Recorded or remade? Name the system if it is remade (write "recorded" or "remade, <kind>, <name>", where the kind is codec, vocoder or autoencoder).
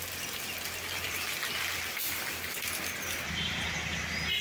recorded